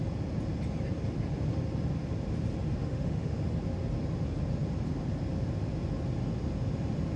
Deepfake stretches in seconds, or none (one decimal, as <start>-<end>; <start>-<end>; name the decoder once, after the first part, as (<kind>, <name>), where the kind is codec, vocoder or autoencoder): 2.8-3.4 (autoencoder, DAC-VAE)